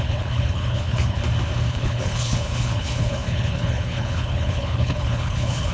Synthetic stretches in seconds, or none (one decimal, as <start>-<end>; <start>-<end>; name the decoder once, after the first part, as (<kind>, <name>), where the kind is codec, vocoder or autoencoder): 0.0-1.2 (codec, HILCodec); 1.7-5.7